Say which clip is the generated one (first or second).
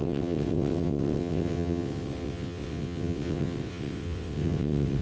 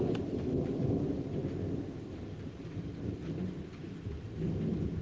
first